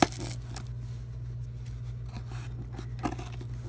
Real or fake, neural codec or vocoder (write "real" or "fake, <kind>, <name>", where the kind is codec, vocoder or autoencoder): real